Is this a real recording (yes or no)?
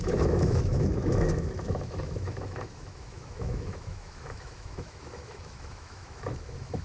no